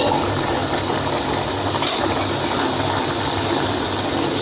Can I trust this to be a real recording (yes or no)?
yes